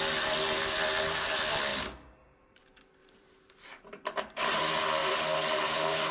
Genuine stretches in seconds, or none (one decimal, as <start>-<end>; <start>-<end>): 0.0-1.7; 2.6-3.0; 4.6-5.0